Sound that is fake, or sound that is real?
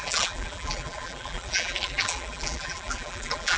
fake